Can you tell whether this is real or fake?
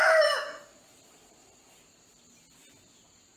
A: fake